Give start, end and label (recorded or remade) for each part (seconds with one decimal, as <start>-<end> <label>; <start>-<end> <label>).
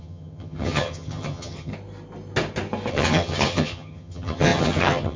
0.0-1.7 remade; 1.7-2.9 recorded; 2.9-5.2 remade